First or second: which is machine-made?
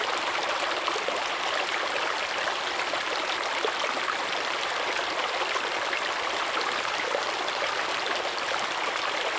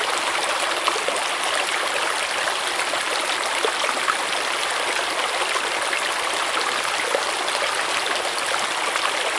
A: first